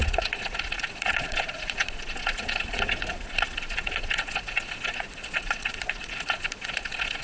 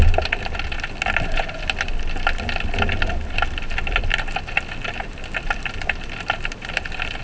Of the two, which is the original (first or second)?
second